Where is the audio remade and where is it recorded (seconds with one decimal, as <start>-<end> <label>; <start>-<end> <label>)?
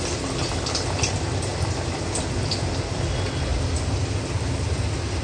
0.0-5.2 recorded